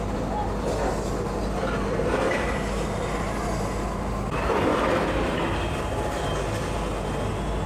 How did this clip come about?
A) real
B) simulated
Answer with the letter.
A